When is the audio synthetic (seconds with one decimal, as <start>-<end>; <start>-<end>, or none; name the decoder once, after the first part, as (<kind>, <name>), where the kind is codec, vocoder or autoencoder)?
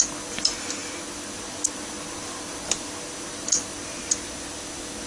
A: none